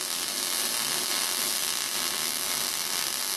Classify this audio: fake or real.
real